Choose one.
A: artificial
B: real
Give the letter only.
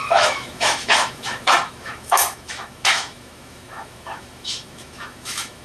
A